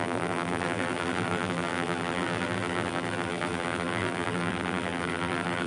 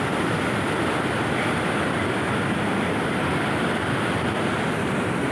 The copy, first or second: first